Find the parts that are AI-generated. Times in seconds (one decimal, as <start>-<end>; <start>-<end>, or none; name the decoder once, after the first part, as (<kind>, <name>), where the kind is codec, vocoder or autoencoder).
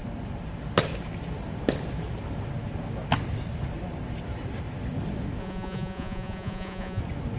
5.4-7.0 (vocoder, Vocos)